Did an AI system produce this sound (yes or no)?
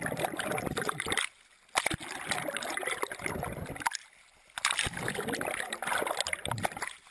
no